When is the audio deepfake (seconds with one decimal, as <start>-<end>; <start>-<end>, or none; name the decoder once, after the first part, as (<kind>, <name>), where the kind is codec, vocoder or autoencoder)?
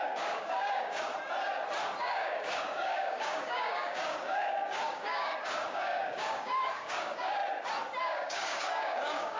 0.0-1.1 (codec, DAC); 2.0-7.4; 8.0-9.4